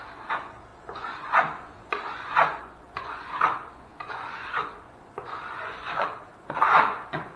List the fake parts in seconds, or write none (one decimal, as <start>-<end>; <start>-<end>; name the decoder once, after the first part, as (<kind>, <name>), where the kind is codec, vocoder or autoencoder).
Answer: 0.0-7.4 (vocoder, Vocos)